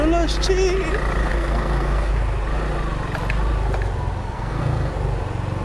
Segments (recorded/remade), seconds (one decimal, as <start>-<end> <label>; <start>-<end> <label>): 0.0-1.2 recorded; 1.2-2.1 remade; 2.1-4.2 recorded; 4.2-4.9 remade; 4.9-5.6 recorded

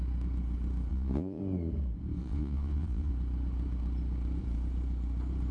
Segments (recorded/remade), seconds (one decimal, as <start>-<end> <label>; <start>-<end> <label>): 0.0-0.9 recorded; 0.9-1.4 remade; 1.4-2.2 recorded; 2.2-3.1 remade; 3.1-5.5 recorded

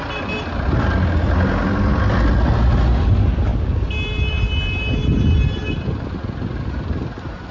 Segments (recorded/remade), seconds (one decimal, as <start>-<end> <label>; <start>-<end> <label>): 0.0-7.5 recorded

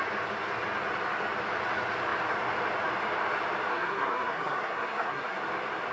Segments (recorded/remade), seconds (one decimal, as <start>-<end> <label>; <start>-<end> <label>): 0.0-3.7 recorded; 3.7-5.4 remade; 5.4-5.9 recorded

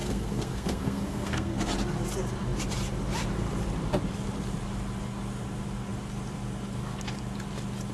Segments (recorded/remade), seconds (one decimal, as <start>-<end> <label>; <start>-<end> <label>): 0.0-1.7 remade; 1.7-7.9 recorded